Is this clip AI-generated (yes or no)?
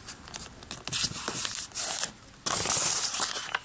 no